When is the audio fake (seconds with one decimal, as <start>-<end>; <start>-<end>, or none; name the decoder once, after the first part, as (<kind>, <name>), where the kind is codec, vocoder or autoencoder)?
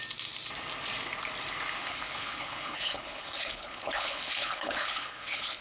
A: 1.8-5.6 (codec, HILCodec)